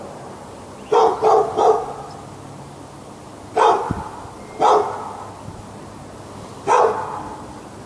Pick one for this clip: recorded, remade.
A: recorded